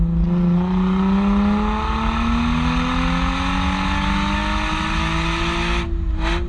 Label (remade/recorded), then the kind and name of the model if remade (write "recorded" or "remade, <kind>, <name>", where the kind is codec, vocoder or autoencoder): recorded